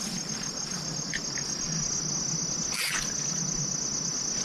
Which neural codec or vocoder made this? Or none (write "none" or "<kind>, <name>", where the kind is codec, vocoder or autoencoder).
none